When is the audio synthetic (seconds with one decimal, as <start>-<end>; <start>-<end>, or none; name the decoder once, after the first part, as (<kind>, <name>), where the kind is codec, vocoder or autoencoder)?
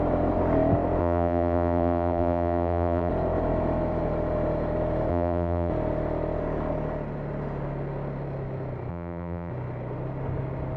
1.0-3.1 (vocoder, BigVGAN v2); 5.1-5.7; 8.9-9.5